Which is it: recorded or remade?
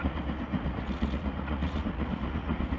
remade